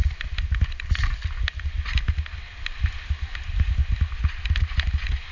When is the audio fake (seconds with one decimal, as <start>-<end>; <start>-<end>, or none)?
3.2-3.8